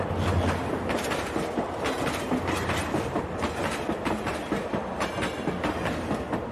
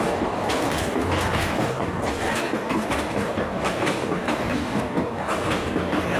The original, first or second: first